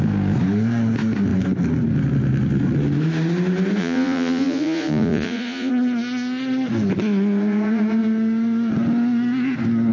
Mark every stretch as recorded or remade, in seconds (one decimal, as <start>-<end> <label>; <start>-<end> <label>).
0.0-3.8 recorded; 3.8-5.7 remade; 5.7-9.9 recorded